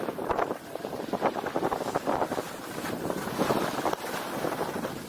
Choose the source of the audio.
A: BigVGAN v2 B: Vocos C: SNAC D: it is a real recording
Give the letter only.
A